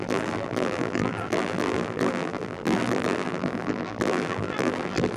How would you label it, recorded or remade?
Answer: remade